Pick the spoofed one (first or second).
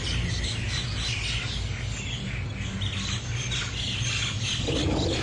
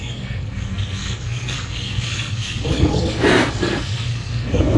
second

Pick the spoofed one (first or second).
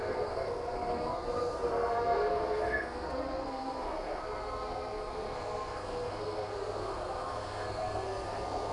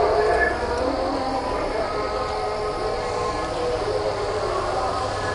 first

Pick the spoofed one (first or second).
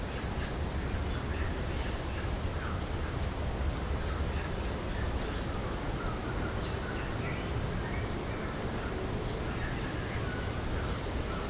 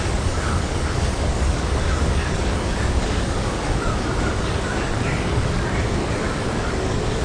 second